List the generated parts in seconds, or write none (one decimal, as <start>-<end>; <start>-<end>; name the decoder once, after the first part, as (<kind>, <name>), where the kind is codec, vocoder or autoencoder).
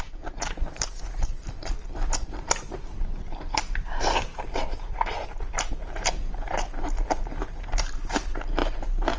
0.0-9.2 (vocoder, BigVGAN v2)